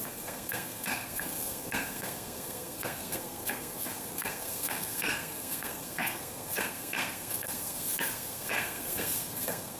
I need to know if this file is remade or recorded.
remade